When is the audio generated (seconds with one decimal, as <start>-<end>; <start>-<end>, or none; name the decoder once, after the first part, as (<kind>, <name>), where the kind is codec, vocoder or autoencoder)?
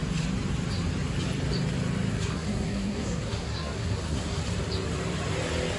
2.1-4.4 (codec, SNAC)